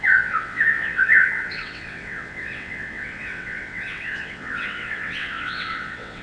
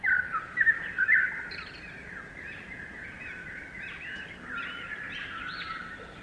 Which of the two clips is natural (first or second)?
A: second